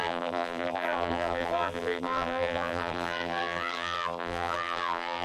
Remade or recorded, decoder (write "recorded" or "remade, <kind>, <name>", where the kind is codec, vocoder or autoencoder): remade, vocoder, BigVGAN v2